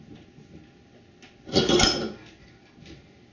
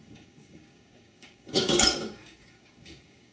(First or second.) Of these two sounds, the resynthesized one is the second